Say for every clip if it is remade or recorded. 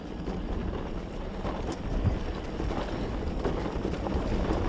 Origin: recorded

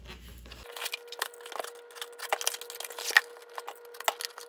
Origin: recorded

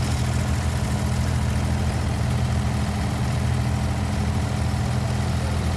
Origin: recorded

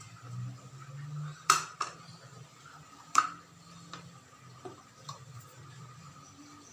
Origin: remade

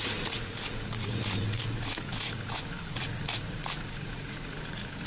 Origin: remade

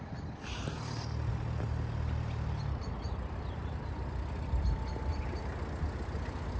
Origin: recorded